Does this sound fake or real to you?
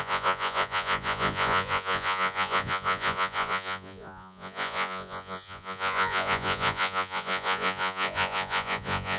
fake